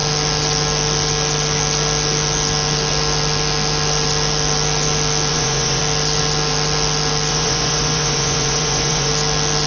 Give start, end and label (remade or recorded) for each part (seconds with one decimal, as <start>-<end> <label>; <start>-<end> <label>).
0.0-5.3 recorded; 5.3-5.8 remade; 5.8-7.3 recorded; 7.3-9.1 remade; 9.1-9.7 recorded